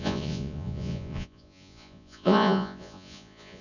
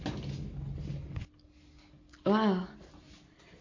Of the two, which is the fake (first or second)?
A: first